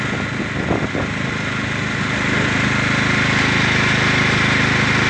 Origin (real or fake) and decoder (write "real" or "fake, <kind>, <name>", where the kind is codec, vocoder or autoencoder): real